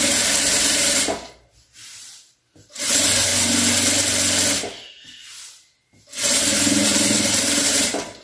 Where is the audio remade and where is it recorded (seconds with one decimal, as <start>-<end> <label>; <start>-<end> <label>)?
0.0-3.3 remade; 3.3-6.2 recorded; 6.2-8.2 remade